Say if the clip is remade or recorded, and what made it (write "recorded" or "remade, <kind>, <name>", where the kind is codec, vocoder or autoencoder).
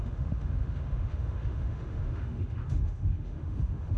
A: remade, autoencoder, DAC-VAE